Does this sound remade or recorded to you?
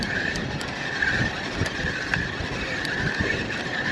recorded